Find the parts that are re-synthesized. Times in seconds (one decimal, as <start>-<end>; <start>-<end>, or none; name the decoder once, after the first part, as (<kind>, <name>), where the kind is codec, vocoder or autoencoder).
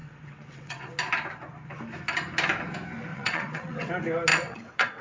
0.0-0.9 (vocoder, WaveNeXt); 3.1-3.9; 4.3-5.0